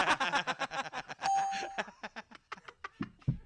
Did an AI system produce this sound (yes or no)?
no